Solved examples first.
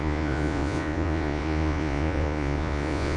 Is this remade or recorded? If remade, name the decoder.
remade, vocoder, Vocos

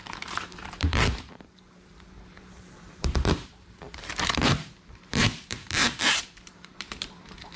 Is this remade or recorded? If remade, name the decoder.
remade, vocoder, BigVGAN v2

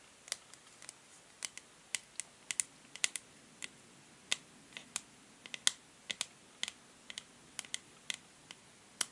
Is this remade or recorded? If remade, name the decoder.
recorded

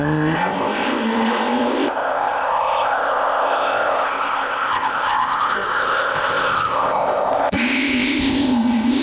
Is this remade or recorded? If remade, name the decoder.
remade, codec, ZipCodec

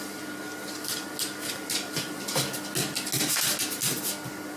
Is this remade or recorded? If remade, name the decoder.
recorded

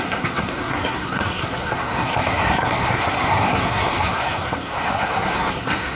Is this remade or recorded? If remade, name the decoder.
remade, codec, SNAC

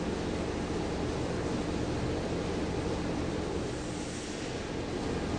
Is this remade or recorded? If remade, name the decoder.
recorded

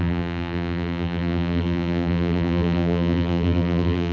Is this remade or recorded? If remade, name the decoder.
remade, vocoder, BigVGAN v2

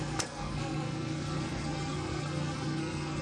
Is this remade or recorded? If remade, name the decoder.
remade, codec, SNAC